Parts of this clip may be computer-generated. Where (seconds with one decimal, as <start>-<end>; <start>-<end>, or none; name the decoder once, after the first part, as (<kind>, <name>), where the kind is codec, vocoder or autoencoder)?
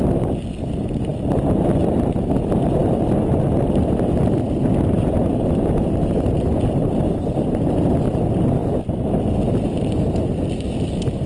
none